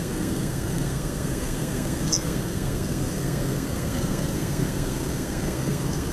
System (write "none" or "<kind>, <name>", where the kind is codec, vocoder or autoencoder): codec, SNAC